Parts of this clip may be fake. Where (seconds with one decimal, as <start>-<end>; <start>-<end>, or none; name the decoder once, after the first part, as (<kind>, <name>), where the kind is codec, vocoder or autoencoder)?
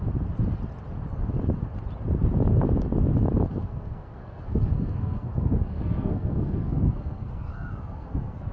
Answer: 3.5-8.5 (codec, SNAC)